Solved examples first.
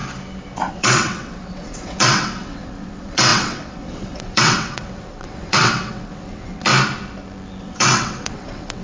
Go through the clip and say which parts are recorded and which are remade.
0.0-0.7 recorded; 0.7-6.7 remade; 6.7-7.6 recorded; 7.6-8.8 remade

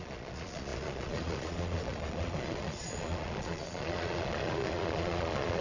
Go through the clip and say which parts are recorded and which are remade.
0.0-5.6 remade

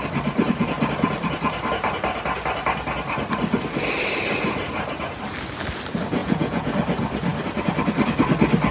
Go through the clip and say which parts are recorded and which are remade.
0.0-6.2 recorded; 6.2-6.7 remade; 6.7-8.7 recorded